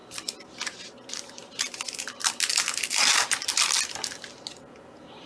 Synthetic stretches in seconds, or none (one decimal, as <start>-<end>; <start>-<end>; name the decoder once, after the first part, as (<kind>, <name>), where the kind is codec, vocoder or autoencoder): none